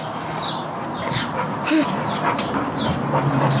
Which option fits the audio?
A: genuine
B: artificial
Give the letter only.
A